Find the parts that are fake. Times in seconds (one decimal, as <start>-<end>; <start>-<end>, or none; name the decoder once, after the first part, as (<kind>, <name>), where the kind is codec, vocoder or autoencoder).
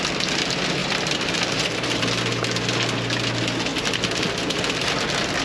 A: 0.8-2.0 (vocoder, BigVGAN v2); 3.7-4.9